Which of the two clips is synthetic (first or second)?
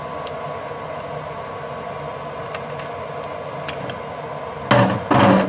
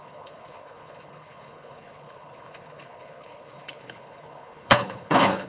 second